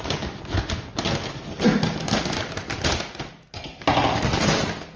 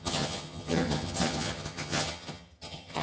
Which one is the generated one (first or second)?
second